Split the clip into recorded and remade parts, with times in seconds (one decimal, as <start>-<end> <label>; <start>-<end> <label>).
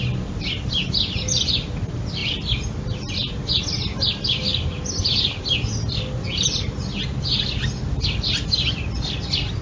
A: 0.0-9.6 recorded